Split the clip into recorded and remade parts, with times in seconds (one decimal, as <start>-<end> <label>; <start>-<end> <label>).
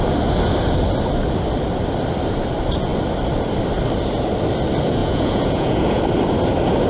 0.0-5.0 recorded; 5.0-6.0 remade; 6.0-6.9 recorded